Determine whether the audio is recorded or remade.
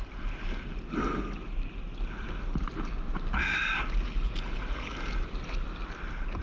recorded